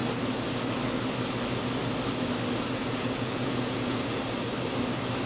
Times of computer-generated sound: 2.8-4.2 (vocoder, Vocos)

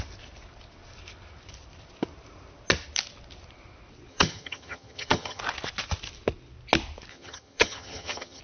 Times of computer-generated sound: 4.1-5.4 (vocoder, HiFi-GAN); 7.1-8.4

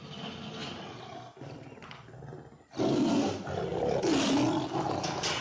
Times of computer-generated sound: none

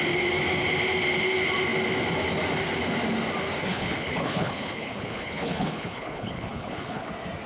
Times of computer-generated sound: 3.7-7.1 (codec, HILCodec)

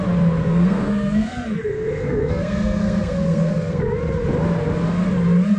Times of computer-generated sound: 0.4-3.8 (codec, SNAC)

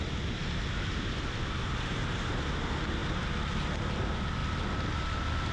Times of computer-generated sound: none